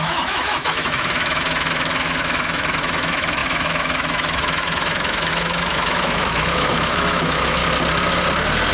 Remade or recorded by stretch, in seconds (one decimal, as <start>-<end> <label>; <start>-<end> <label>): 0.0-7.6 remade; 7.6-8.7 recorded